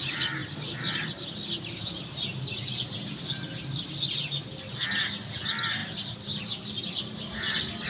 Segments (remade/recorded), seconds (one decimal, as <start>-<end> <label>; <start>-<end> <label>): 0.0-7.9 recorded